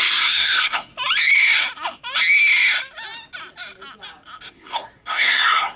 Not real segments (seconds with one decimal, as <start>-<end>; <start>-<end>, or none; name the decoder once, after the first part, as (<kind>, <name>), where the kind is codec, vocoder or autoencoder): 0.0-0.9 (codec, SNAC); 4.4-5.8